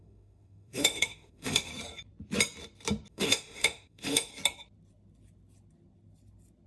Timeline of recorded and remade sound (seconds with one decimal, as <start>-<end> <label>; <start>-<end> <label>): 0.0-1.7 remade; 1.7-3.1 recorded; 3.1-4.3 remade; 4.3-6.7 recorded